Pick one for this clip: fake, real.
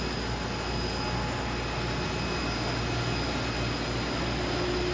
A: real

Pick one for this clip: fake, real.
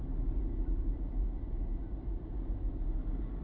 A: real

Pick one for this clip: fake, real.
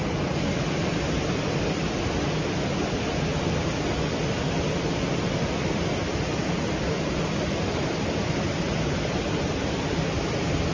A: real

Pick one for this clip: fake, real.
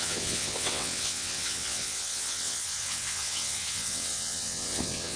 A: fake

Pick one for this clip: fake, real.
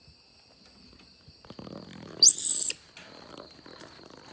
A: real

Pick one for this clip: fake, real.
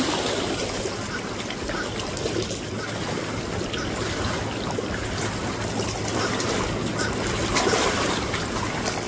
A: real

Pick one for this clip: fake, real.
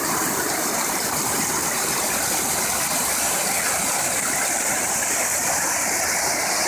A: fake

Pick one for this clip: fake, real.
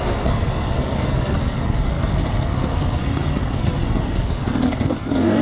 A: fake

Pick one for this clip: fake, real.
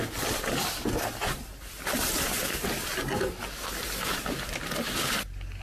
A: real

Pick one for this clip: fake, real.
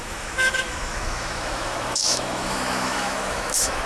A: fake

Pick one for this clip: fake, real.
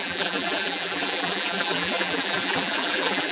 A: fake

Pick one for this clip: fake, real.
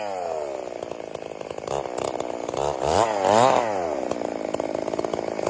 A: real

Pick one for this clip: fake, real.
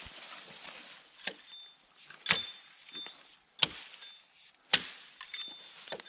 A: real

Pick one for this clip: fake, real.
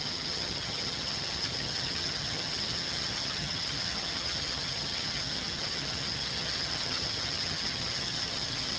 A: fake